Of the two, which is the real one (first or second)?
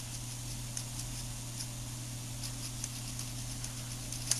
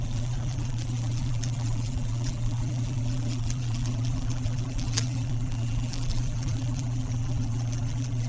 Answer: first